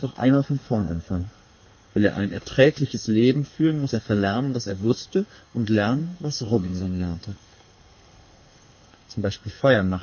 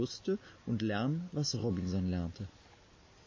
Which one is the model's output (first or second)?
first